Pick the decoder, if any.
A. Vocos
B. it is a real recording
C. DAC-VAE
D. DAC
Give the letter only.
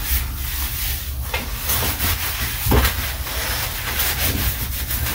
B